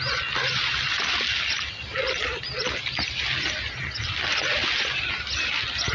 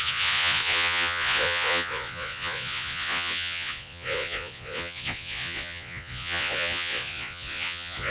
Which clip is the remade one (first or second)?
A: second